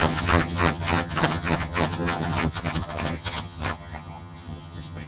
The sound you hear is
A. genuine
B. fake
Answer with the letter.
B